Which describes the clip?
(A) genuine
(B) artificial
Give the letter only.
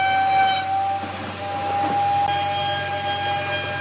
A